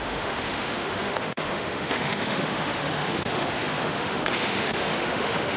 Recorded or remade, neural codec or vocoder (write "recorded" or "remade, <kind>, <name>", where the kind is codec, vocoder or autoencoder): remade, autoencoder, DAC-VAE